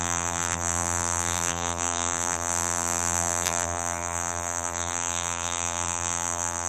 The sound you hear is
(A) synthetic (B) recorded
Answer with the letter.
A